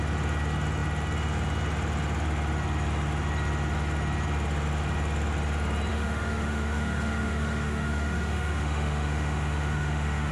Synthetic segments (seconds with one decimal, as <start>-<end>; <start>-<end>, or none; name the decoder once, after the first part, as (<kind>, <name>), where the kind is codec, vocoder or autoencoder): 5.9-10.3 (autoencoder, DAC-VAE)